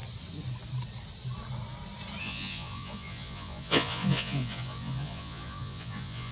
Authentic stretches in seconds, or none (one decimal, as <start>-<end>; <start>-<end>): 0.0-2.2